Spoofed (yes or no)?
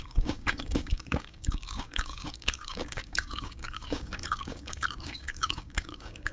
yes